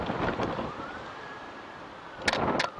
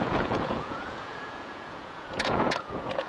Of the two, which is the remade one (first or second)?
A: second